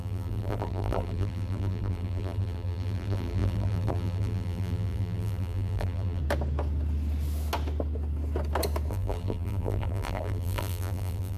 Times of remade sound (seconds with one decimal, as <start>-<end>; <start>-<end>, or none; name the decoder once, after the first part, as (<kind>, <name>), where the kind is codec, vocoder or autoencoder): 0.0-6.2 (vocoder, BigVGAN v2); 8.9-11.4